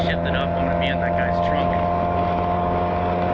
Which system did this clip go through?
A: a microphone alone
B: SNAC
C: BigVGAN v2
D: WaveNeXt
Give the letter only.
A